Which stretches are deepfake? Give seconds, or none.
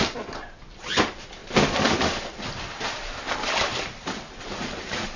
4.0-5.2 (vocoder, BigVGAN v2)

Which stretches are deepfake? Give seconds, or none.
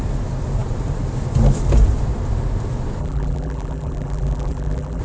3.0-5.0 (vocoder, BigVGAN v2)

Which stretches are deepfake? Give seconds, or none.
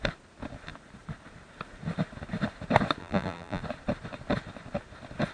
3.0-3.6 (vocoder, BigVGAN v2)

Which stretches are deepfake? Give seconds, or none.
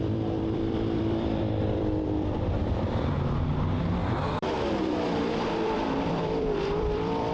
0.0-7.3 (vocoder, BigVGAN v2)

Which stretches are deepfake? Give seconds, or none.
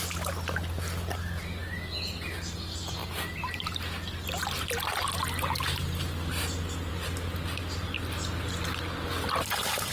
none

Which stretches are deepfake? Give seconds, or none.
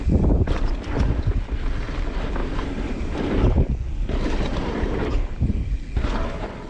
2.4-3.3 (vocoder, BigVGAN v2); 4.5-5.5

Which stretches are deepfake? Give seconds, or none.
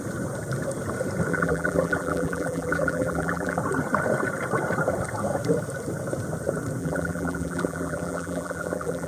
1.3-3.6 (vocoder, BigVGAN v2); 6.8-9.1